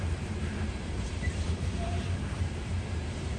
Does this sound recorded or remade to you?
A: remade